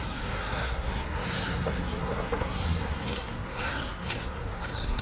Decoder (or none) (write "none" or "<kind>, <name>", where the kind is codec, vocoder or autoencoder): codec, SNAC